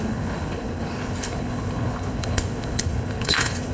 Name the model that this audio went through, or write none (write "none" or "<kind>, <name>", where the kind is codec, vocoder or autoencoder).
codec, HILCodec